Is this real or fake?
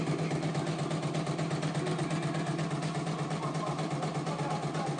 real